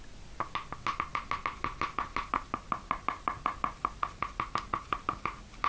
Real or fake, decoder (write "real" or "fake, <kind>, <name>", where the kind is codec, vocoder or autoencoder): real